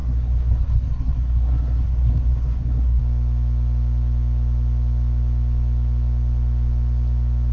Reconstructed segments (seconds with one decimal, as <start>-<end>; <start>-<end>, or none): 0.0-3.0